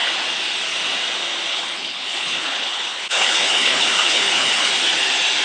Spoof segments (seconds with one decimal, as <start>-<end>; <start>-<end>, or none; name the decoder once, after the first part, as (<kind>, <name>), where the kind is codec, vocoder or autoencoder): 1.5-4.7 (codec, HILCodec)